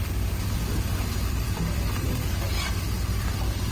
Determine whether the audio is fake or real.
fake